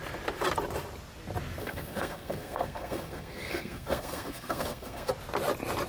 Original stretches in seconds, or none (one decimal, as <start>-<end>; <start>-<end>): 0.0-1.6; 5.1-5.9